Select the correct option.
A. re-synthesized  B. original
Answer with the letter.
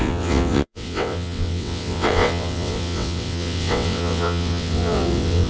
A